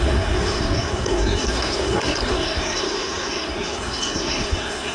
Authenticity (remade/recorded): remade